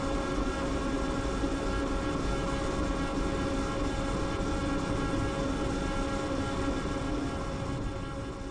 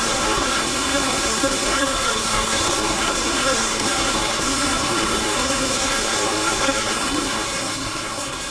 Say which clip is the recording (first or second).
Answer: first